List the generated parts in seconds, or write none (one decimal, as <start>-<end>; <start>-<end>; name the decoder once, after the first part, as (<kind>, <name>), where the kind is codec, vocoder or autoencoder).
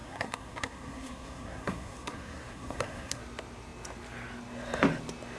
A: 0.0-3.2 (codec, SNAC)